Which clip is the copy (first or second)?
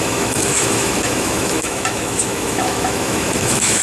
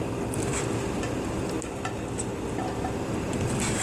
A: first